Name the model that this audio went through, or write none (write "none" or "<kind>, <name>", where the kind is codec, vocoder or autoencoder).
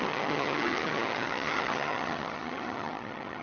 vocoder, HiFi-GAN